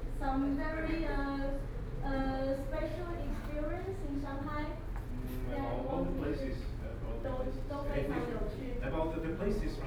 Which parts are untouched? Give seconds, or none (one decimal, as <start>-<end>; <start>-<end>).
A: 0.0-9.9